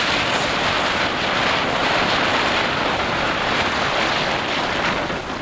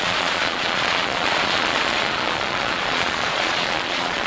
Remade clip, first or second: second